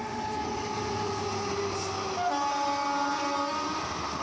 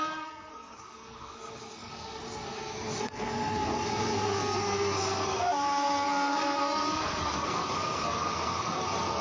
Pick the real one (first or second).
first